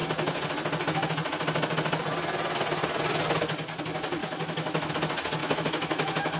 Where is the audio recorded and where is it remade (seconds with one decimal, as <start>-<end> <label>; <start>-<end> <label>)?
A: 0.0-4.2 recorded; 4.2-4.9 remade; 4.9-5.4 recorded; 5.4-6.4 remade